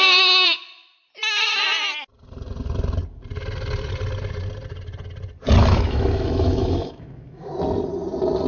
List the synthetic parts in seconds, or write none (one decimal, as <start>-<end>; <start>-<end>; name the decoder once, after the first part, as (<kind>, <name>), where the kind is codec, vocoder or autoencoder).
5.6-7.5 (autoencoder, DAC-VAE)